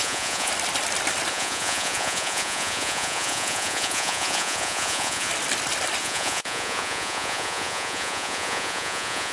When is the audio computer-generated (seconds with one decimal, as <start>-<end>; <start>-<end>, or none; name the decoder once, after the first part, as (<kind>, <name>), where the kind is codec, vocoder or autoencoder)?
0.0-0.5 (vocoder, Vocos); 1.3-5.3; 6.0-9.3